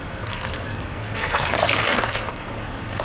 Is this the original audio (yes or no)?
no